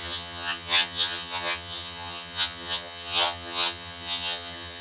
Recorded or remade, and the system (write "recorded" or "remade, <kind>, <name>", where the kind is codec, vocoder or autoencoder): remade, vocoder, HiFi-GAN